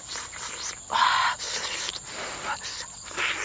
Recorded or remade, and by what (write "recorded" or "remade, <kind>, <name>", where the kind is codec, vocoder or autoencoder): recorded